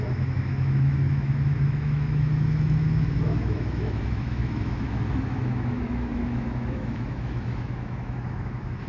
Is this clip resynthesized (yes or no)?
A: yes